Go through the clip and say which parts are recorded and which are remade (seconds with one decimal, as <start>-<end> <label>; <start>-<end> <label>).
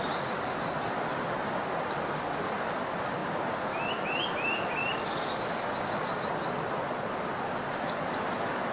0.0-8.7 recorded